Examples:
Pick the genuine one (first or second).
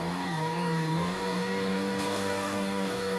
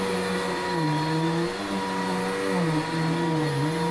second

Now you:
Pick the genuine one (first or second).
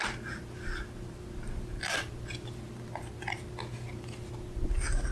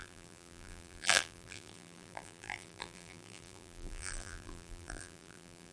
first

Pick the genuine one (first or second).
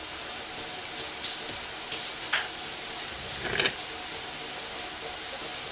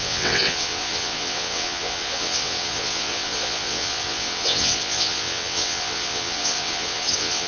first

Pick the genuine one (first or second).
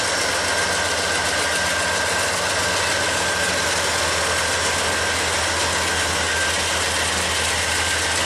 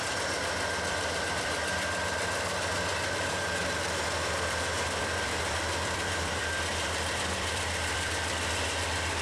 first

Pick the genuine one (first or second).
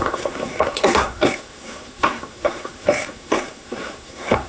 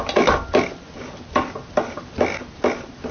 second